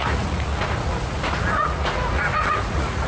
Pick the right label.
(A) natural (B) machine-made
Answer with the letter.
B